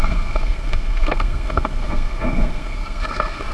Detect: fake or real fake